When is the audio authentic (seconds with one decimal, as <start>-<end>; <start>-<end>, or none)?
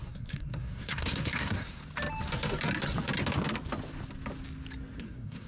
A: 1.8-5.0